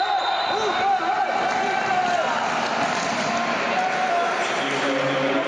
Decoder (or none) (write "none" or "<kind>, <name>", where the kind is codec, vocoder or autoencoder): none